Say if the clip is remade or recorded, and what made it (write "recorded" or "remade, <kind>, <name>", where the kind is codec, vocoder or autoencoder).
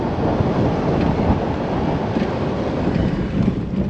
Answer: recorded